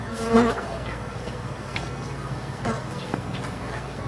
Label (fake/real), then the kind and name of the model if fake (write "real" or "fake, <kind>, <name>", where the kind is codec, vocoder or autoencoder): fake, codec, SNAC